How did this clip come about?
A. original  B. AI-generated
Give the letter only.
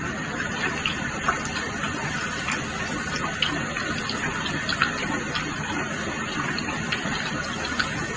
A